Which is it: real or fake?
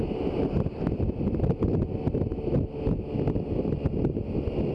real